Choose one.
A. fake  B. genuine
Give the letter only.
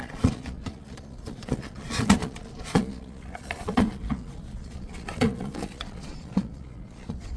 A